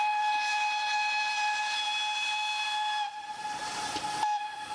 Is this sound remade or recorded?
recorded